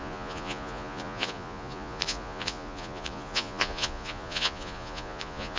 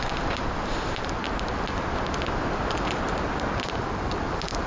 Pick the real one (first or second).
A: second